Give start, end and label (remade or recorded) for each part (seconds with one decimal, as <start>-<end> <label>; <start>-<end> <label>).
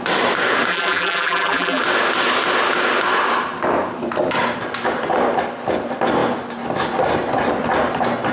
0.0-0.7 recorded; 0.7-1.8 remade; 1.8-8.3 recorded